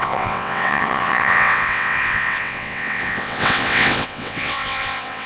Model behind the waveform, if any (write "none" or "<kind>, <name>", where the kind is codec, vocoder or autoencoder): vocoder, WaveNeXt